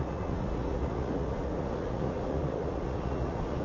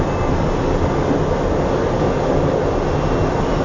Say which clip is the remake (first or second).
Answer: first